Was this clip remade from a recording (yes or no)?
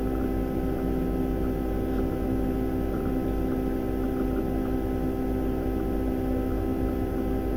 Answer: no